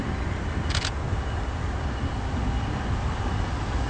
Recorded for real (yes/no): yes